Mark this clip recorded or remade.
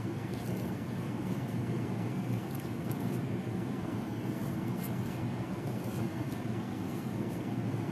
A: remade